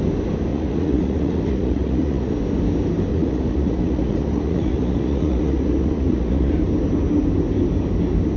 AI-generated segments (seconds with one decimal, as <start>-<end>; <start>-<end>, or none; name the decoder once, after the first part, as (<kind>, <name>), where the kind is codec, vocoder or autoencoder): 0.5-2.3 (vocoder, Vocos); 3.1-6.5